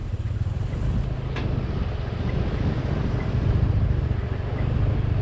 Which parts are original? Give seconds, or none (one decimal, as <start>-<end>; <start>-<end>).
0.0-5.2